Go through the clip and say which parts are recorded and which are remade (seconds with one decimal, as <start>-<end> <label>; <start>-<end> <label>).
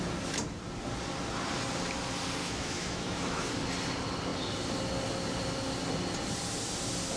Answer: 0.0-2.4 recorded; 2.4-3.4 remade; 3.4-7.2 recorded